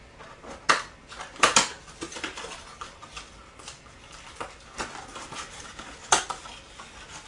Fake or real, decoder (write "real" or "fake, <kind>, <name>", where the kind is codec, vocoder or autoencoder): real